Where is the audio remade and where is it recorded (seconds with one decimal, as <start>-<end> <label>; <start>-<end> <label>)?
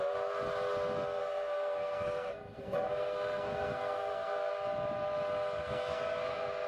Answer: 0.0-1.2 recorded; 1.2-4.5 remade; 4.5-5.6 recorded; 5.6-6.7 remade